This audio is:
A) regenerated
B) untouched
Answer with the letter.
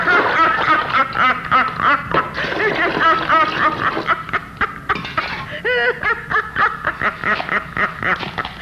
B